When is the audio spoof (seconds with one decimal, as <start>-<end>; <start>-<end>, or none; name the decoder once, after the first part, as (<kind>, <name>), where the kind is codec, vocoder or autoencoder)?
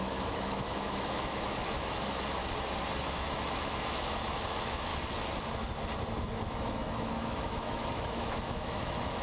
0.0-2.4 (autoencoder, DAC-VAE); 3.0-4.9; 6.2-9.2